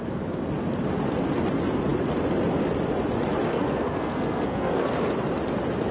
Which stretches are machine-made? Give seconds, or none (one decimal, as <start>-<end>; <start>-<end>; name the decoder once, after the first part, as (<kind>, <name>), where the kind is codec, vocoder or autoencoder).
3.5-4.9 (codec, SNAC)